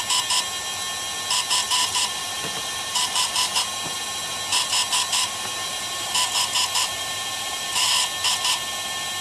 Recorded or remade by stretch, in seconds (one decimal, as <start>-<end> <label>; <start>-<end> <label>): 0.0-1.8 recorded; 1.8-3.6 remade; 3.6-5.2 recorded; 5.2-7.9 remade; 7.9-9.2 recorded